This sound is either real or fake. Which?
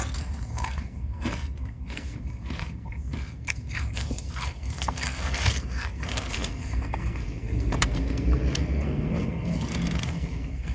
fake